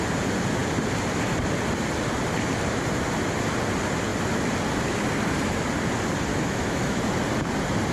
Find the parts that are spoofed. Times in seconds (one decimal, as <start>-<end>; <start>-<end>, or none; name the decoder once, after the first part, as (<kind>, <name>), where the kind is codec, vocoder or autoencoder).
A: 6.3-7.0 (autoencoder, DAC-VAE)